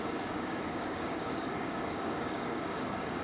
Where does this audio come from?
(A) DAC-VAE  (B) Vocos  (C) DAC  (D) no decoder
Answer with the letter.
C